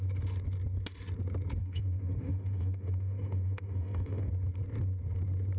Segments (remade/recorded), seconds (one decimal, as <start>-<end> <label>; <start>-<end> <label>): 0.0-1.6 recorded; 1.6-4.3 remade; 4.3-5.6 recorded